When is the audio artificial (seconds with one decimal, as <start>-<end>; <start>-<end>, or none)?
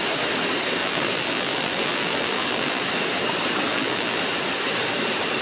0.8-2.8; 3.7-4.2